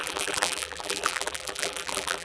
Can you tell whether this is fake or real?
fake